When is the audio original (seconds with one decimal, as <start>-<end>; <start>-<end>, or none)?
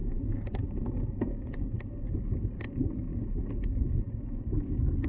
1.7-5.1